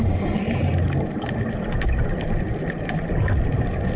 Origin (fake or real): real